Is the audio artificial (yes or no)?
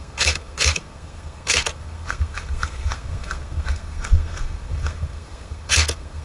yes